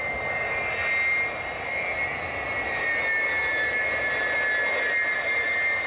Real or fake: real